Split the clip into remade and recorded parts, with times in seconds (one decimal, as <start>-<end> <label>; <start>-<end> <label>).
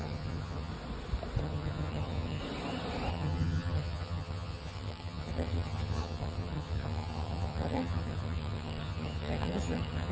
0.0-0.7 remade; 0.7-1.4 recorded; 1.4-2.4 remade; 2.4-3.1 recorded; 3.1-10.1 remade